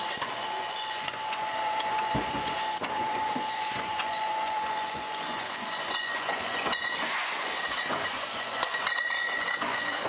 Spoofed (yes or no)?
yes